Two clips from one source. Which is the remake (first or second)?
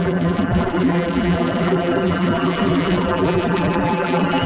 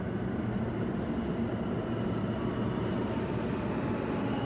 first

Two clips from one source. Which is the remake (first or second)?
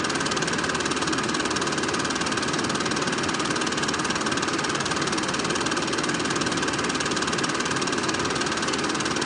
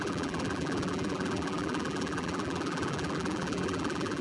second